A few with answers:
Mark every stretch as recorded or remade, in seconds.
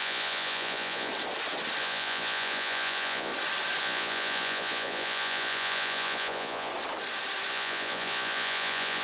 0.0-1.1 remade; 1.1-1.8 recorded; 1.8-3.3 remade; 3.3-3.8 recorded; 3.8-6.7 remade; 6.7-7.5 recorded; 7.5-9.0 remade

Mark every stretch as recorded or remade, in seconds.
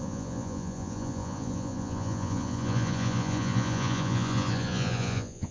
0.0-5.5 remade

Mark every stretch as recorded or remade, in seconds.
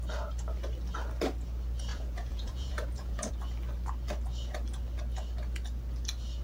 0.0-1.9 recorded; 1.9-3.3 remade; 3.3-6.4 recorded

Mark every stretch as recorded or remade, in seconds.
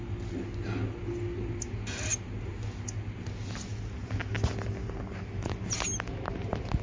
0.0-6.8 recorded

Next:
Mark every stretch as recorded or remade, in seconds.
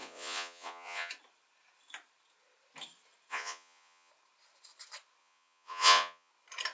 0.0-1.1 remade; 1.1-3.3 recorded; 3.3-4.1 remade; 4.1-5.2 recorded; 5.2-6.3 remade; 6.3-6.7 recorded